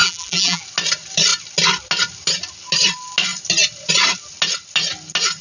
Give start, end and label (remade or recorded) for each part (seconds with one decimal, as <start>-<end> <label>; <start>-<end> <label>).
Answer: 0.0-0.6 remade; 0.6-5.4 recorded

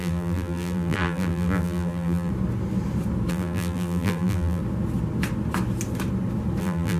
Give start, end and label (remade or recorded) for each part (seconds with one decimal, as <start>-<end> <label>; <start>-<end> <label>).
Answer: 0.0-2.3 remade; 2.3-3.3 recorded; 3.3-4.6 remade; 4.6-6.6 recorded; 6.6-7.0 remade

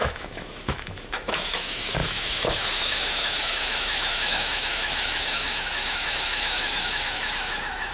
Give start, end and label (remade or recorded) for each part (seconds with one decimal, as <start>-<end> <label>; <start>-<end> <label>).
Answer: 0.0-7.9 remade

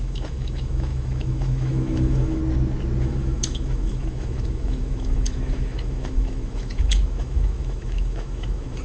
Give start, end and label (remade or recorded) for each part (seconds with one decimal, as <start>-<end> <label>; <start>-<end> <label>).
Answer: 0.0-2.4 remade; 2.4-3.0 recorded; 3.0-8.8 remade